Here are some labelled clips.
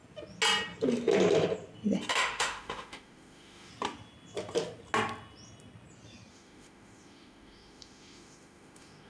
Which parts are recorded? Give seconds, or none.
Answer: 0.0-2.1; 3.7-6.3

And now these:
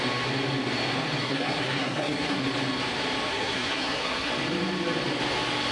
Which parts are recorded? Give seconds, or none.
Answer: 0.0-1.2; 2.4-3.3; 4.3-5.7

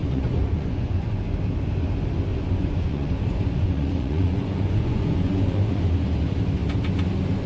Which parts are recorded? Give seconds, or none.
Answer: 1.2-2.3; 5.8-7.5

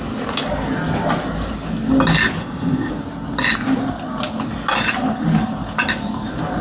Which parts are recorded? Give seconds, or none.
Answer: 0.0-2.4; 2.9-6.6